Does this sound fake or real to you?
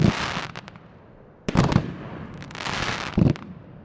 real